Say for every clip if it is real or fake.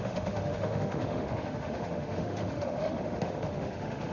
fake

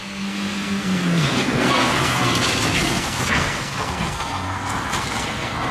fake